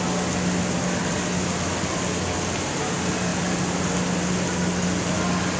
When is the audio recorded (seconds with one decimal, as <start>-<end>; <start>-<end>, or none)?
0.0-5.6